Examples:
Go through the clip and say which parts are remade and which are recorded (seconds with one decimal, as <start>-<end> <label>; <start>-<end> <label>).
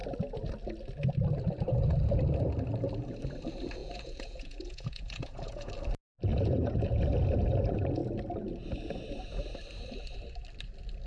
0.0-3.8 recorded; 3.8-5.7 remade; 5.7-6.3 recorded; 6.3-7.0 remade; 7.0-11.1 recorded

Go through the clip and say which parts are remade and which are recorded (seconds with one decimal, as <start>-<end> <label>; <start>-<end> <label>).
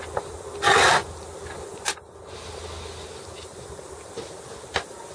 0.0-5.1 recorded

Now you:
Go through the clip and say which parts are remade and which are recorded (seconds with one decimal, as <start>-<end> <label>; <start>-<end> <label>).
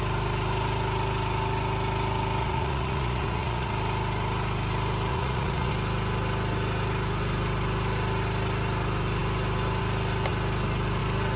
0.0-2.4 recorded; 2.4-3.7 remade; 3.7-5.1 recorded; 5.1-5.7 remade; 5.7-11.4 recorded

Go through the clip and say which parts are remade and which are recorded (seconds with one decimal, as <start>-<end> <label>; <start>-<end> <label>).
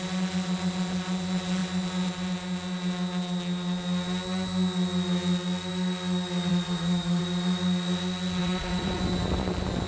0.0-6.5 recorded; 6.5-7.2 remade; 7.2-8.4 recorded; 8.4-9.0 remade; 9.0-9.9 recorded